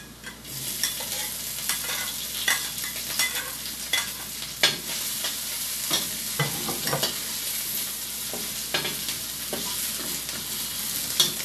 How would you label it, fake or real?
real